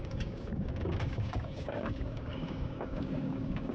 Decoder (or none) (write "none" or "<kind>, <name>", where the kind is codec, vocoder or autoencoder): codec, DAC